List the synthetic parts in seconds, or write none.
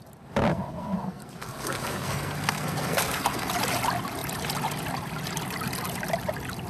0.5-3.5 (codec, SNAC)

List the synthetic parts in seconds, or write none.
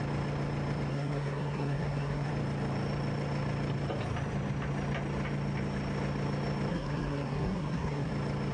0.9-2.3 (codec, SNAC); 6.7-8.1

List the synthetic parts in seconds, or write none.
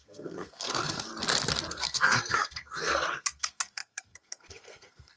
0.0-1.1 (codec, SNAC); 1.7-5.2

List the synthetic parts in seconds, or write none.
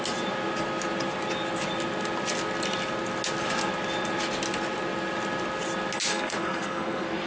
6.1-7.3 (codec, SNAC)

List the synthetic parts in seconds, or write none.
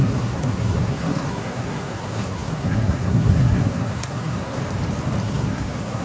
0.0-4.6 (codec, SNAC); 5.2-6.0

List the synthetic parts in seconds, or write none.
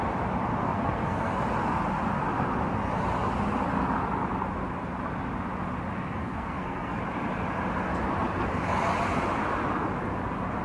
0.6-1.4 (codec, SNAC); 6.2-7.0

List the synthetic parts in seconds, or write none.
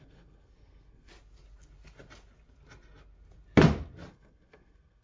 0.0-1.1 (codec, SNAC); 4.1-5.0